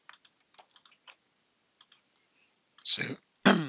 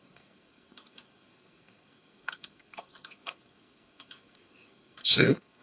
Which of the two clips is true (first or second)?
first